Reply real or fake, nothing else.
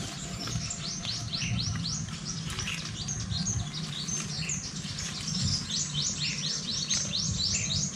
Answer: real